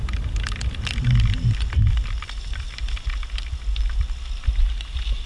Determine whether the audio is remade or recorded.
recorded